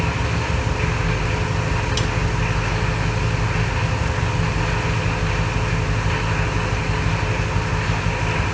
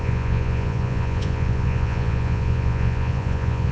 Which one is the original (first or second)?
first